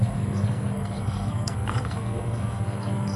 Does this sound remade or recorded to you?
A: remade